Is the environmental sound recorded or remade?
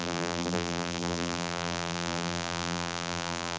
remade